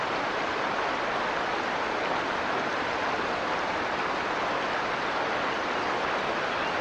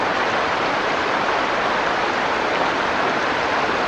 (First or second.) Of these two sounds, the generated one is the second